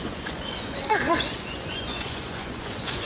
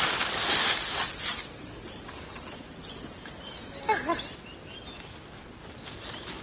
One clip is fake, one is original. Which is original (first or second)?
second